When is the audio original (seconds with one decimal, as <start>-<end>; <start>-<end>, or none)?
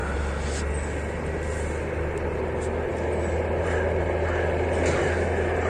0.0-5.7